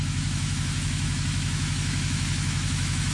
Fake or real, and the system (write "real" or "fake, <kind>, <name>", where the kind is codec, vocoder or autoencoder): fake, autoencoder, DAC-VAE